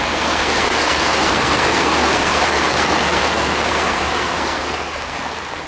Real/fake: fake